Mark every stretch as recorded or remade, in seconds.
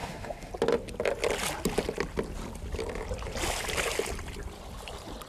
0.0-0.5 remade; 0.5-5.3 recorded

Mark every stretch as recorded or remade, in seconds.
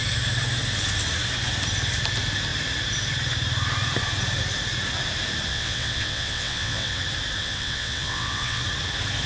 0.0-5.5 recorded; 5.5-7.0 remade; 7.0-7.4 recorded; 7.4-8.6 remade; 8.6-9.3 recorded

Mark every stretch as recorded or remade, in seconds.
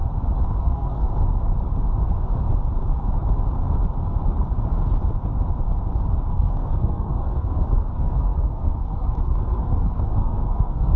0.0-0.6 recorded; 0.6-1.1 remade; 1.1-6.3 recorded; 6.3-11.0 remade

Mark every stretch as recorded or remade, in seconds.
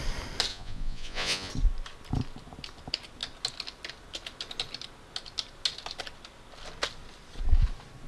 0.0-0.5 recorded; 0.5-1.5 remade; 1.5-8.1 recorded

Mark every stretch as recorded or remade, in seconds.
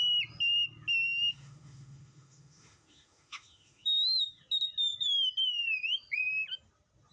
0.0-1.3 recorded; 1.3-4.4 remade; 4.4-7.1 recorded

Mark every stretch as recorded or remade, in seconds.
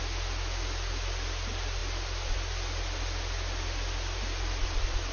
0.0-5.1 recorded